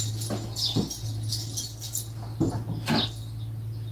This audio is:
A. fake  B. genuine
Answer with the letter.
B